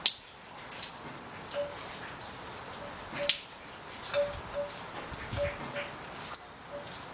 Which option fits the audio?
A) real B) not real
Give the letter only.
A